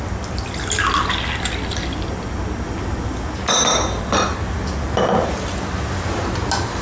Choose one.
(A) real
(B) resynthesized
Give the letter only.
A